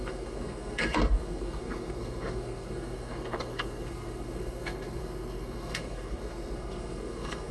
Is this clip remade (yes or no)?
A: yes